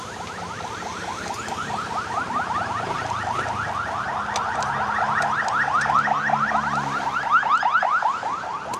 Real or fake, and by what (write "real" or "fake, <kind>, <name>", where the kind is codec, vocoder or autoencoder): real